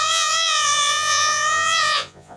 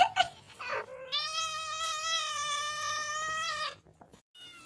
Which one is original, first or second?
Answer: second